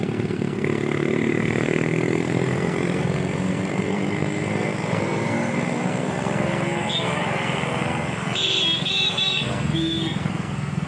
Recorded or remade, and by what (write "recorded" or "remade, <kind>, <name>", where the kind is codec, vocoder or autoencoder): remade, codec, SNAC